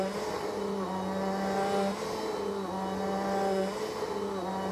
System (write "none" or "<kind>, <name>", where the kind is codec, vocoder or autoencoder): none